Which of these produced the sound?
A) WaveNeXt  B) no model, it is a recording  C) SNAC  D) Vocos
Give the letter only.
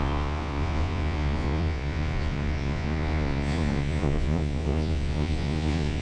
D